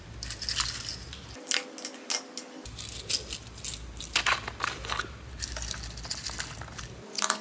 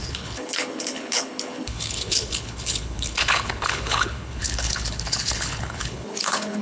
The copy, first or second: second